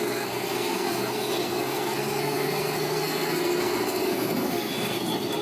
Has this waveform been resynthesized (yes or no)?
yes